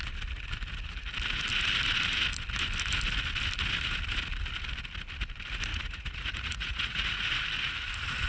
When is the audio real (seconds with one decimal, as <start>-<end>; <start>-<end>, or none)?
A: 0.0-5.7; 7.3-8.3